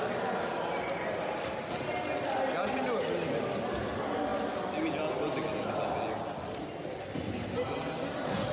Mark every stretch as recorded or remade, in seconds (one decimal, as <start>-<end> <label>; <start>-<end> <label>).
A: 0.0-8.5 recorded